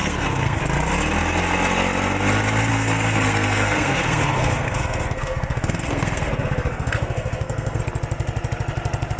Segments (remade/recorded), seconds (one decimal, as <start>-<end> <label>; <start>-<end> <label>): 0.0-0.6 remade; 0.6-2.7 recorded; 2.7-7.8 remade; 7.8-9.2 recorded